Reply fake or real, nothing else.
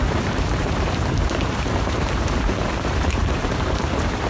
fake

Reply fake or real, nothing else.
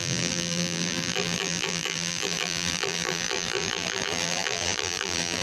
fake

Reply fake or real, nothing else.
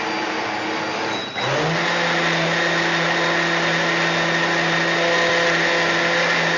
real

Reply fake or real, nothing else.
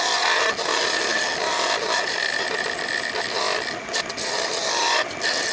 real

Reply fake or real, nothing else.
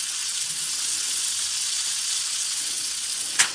fake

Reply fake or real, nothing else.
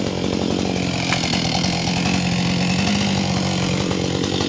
real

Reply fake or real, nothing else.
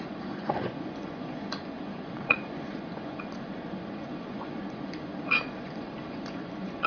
fake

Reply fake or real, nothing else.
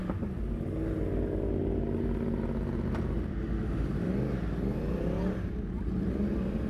real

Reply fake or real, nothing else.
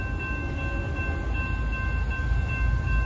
real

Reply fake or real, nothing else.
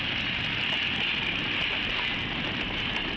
real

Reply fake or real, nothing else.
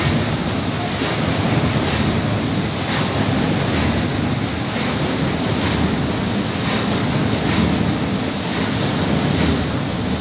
real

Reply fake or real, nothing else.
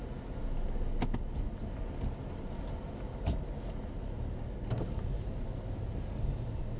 real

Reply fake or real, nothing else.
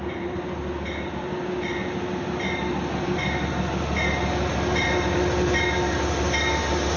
real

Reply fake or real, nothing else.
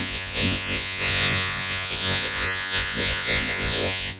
fake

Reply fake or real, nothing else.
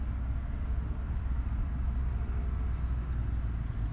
real